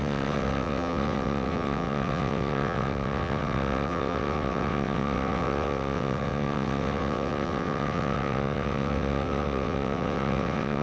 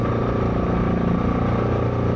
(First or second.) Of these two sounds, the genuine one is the second